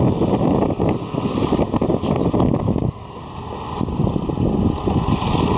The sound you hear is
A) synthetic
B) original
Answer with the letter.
B